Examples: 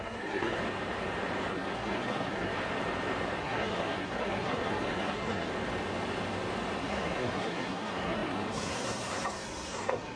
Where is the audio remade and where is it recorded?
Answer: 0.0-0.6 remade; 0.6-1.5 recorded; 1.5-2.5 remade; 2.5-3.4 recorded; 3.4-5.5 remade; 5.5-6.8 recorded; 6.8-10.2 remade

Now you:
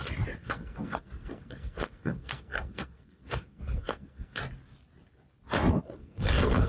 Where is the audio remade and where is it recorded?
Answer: 0.0-0.4 recorded; 0.4-4.4 remade; 4.4-6.0 recorded; 6.0-6.7 remade

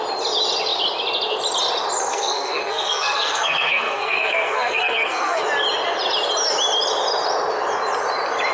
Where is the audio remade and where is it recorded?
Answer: 0.0-2.1 recorded; 2.1-5.4 remade; 5.4-8.5 recorded